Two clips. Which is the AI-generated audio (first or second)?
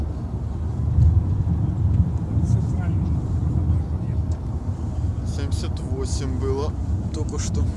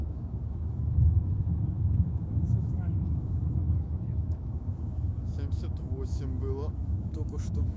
second